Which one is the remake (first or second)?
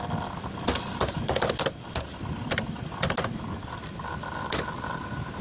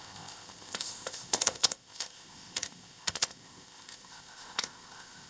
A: second